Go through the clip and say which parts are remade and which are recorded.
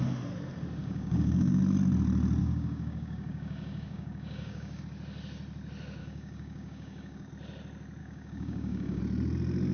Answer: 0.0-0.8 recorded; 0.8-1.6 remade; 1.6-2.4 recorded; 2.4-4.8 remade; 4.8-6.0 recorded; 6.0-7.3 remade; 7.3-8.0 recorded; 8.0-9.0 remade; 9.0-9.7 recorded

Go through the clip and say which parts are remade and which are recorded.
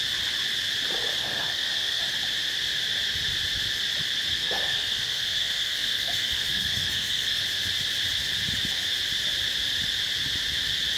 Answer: 0.0-1.2 recorded; 1.2-2.0 remade; 2.0-4.3 recorded; 4.3-7.4 remade; 7.4-11.0 recorded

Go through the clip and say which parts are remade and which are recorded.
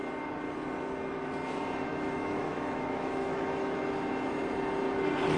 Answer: 0.0-1.9 recorded; 1.9-3.8 remade; 3.8-5.4 recorded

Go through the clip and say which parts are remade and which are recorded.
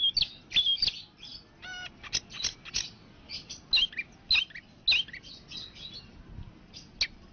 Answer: 0.0-7.3 recorded